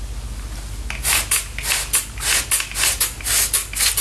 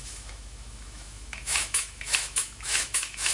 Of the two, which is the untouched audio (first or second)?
first